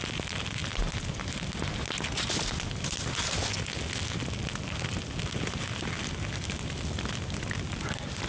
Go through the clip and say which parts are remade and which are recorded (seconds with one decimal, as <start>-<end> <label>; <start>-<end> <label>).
0.0-8.3 recorded